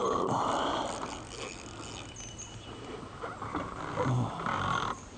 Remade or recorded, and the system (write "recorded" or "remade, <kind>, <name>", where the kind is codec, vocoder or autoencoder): recorded